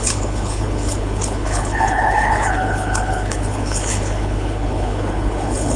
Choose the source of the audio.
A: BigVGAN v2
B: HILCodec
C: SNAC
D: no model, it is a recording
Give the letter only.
B